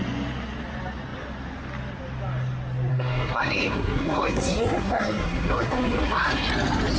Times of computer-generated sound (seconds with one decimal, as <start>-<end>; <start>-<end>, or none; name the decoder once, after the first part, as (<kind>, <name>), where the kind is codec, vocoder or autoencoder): 2.9-6.5 (codec, SNAC)